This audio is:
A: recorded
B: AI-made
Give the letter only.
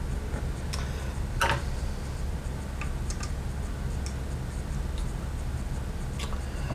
A